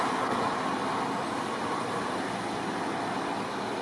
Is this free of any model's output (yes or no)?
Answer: yes